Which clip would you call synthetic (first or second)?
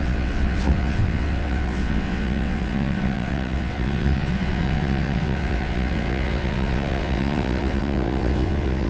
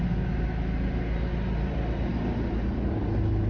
first